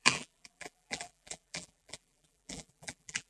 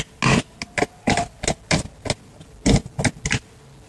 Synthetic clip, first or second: first